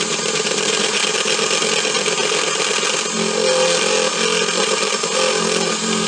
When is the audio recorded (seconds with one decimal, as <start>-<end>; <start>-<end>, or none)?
0.0-6.1